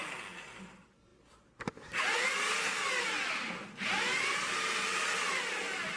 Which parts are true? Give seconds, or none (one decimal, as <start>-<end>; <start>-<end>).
0.0-6.0